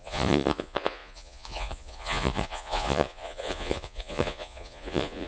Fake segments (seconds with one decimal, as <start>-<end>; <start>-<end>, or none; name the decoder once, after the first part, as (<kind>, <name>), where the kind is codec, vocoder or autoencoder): 0.0-5.3 (vocoder, Vocos)